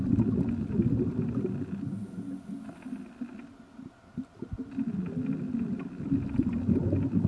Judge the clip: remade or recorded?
recorded